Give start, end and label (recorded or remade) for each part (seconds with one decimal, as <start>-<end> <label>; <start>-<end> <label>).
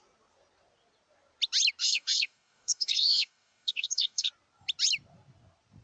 0.0-1.8 recorded; 1.8-4.3 remade; 4.3-5.8 recorded